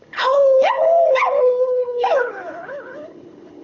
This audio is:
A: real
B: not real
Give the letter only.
B